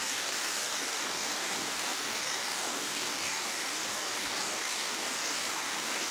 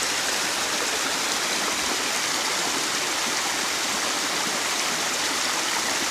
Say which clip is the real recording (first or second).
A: second